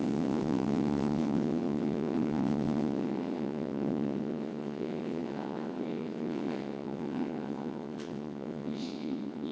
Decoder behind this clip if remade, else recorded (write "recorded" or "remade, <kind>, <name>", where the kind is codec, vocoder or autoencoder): remade, vocoder, WaveNeXt